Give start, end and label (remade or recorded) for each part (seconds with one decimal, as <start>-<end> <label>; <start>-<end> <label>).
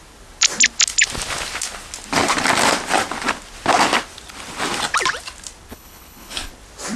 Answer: 0.0-5.7 recorded; 5.7-6.5 remade; 6.5-7.0 recorded